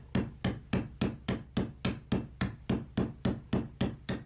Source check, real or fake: real